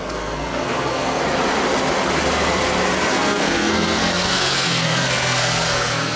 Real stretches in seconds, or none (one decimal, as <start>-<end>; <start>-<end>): 1.2-3.1